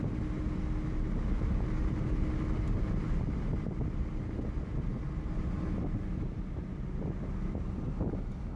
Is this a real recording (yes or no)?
yes